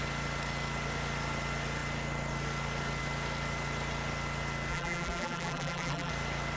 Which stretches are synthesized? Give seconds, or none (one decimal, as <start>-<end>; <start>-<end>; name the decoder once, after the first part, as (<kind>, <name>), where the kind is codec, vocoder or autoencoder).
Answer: 4.7-6.1 (vocoder, BigVGAN v2)